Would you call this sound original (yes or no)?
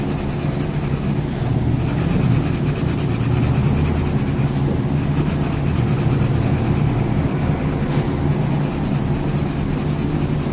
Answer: yes